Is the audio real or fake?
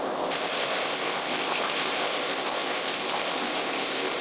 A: fake